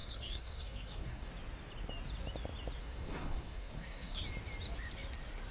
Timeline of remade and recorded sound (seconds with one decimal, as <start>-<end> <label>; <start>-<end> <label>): 0.0-1.3 remade; 1.3-2.8 recorded; 2.8-4.2 remade; 4.2-5.5 recorded